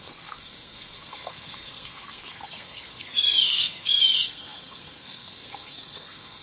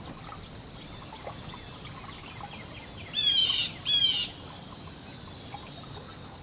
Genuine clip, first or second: second